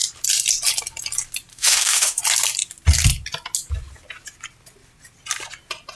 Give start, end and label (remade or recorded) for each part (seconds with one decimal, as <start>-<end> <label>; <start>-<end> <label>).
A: 0.0-1.5 recorded; 1.5-2.2 remade; 2.2-6.0 recorded